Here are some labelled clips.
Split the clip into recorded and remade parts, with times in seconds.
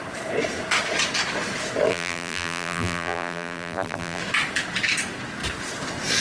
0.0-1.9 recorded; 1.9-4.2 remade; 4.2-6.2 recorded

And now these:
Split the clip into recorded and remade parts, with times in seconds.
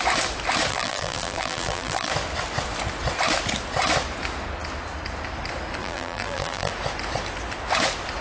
0.0-0.7 recorded; 0.7-2.1 remade; 2.1-5.8 recorded; 5.8-6.7 remade; 6.7-8.2 recorded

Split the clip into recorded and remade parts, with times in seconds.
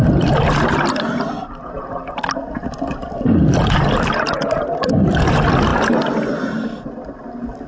0.0-7.7 recorded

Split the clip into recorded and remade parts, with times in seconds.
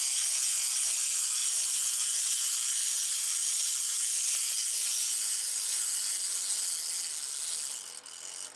0.0-2.8 recorded; 2.8-4.0 remade; 4.0-8.6 recorded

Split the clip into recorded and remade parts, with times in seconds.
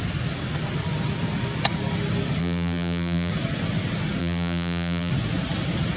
0.0-2.4 recorded; 2.4-3.3 remade; 3.3-4.2 recorded; 4.2-5.1 remade; 5.1-6.0 recorded